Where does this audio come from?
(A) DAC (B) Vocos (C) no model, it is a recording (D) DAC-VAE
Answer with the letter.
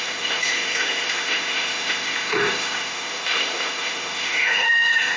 D